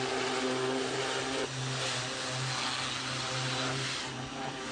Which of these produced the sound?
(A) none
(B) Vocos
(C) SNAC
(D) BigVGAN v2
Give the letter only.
A